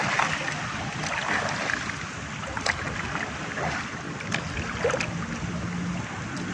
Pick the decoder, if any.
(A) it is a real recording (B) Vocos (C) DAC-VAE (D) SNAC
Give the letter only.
A